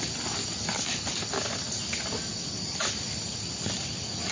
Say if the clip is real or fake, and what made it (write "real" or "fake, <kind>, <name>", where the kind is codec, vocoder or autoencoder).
real